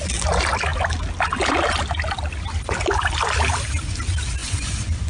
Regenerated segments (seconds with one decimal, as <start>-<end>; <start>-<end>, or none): 4.4-5.1